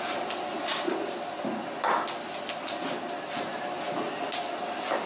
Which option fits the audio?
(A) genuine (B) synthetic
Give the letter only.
A